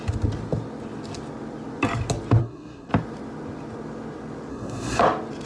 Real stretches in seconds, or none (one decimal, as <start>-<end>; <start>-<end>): 0.0-2.4; 2.9-4.5; 5.0-5.5